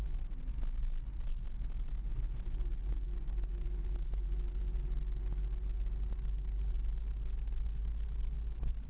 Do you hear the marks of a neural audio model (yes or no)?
no